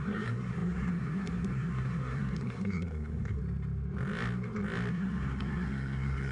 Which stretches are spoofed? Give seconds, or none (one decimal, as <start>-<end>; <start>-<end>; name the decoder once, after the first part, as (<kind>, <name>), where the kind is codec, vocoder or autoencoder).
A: 0.0-3.4 (codec, SNAC); 4.9-6.3